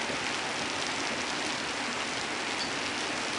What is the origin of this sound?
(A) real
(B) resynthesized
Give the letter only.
A